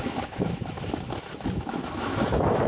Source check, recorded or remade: remade